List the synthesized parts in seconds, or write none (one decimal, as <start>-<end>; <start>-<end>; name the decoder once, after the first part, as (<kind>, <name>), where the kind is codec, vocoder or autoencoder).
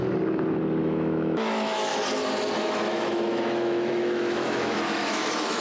0.8-1.9 (autoencoder, DAC-VAE); 2.6-5.6